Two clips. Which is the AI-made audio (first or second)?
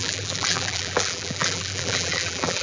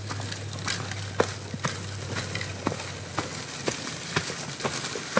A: first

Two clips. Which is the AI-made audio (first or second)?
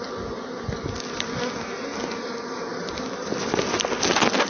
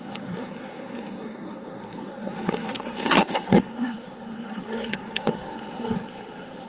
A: second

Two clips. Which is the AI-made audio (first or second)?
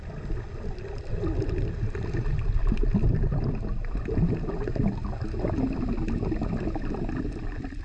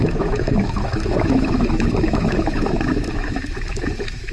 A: second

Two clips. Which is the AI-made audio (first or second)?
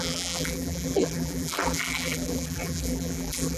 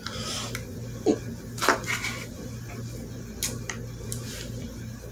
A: first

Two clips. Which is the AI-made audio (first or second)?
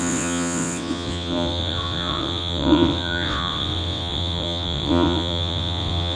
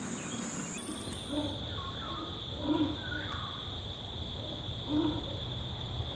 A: first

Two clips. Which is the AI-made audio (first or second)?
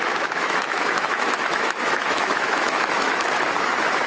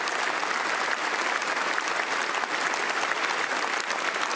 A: first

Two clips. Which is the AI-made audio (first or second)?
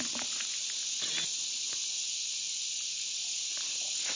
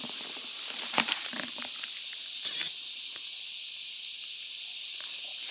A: second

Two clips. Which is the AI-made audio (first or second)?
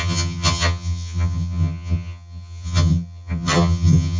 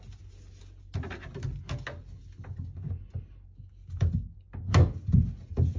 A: first